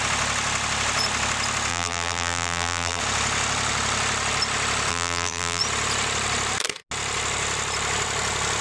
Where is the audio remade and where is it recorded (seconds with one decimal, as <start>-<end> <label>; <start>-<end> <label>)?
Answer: 0.0-1.7 recorded; 1.7-3.0 remade; 3.0-4.9 recorded; 4.9-5.6 remade; 5.6-8.6 recorded